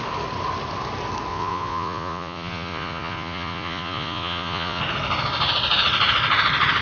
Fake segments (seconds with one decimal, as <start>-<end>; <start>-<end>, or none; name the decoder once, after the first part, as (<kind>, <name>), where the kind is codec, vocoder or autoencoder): 1.3-4.8 (vocoder, Vocos)

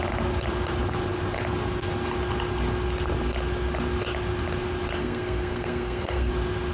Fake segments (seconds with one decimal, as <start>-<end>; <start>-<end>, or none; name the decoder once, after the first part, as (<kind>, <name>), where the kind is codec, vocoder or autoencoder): 5.0-6.3 (codec, SNAC)

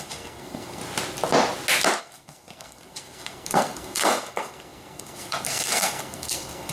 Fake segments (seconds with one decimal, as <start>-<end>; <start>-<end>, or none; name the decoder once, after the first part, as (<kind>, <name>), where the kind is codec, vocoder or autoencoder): 0.0-0.8 (codec, SNAC); 2.0-6.7